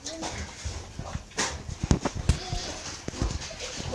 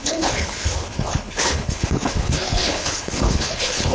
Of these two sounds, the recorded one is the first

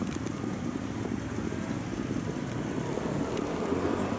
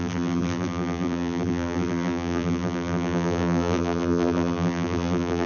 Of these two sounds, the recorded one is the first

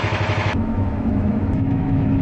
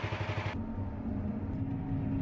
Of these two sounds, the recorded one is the second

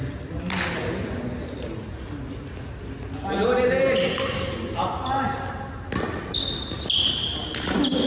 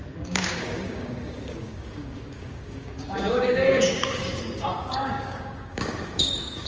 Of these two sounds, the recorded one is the first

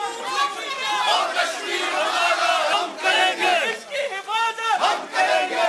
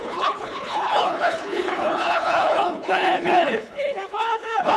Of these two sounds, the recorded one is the first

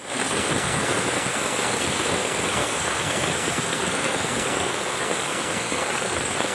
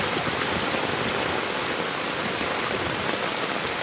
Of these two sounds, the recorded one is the second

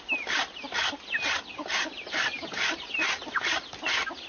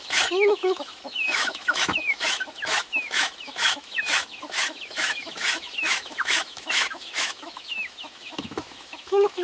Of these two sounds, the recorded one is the first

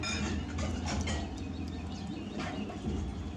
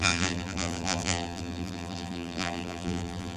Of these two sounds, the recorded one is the first